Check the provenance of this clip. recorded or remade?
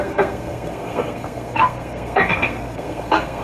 remade